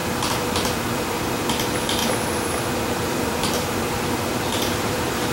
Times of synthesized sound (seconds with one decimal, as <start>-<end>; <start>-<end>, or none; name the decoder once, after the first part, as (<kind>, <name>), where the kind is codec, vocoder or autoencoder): 2.0-5.3 (vocoder, BigVGAN v2)

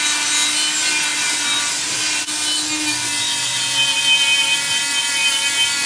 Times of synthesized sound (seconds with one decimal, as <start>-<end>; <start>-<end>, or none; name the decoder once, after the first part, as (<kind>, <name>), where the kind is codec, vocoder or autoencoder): 1.1-2.2 (vocoder, BigVGAN v2)

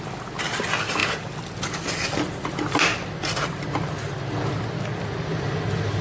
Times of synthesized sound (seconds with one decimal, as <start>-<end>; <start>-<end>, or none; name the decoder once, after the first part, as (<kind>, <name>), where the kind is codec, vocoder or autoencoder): none